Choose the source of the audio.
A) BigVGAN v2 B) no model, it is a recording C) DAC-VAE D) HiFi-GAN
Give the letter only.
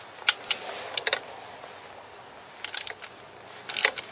B